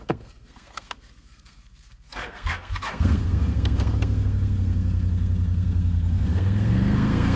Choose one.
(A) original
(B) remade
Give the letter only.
B